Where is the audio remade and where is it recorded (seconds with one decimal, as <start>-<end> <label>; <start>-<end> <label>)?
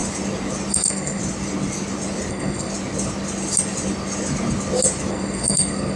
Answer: 0.0-0.7 recorded; 0.7-1.2 remade; 1.2-2.3 recorded; 2.3-2.7 remade; 2.7-5.1 recorded; 5.1-6.0 remade